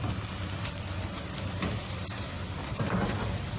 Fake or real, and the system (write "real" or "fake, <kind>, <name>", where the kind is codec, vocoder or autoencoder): real